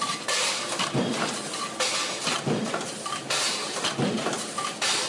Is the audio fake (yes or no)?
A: yes